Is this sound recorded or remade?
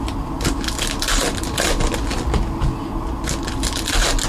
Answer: recorded